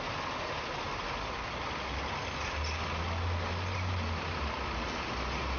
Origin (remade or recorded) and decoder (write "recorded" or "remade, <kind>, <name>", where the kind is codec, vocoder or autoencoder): recorded